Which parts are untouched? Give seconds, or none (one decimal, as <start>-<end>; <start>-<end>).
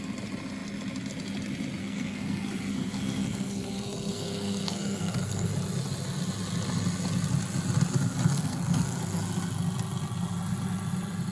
0.0-1.8; 5.5-8.3; 9.2-11.3